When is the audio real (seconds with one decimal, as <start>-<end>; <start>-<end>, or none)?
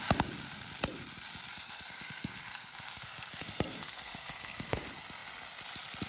0.0-1.5; 4.8-6.1